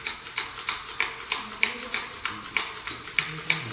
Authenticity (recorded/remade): recorded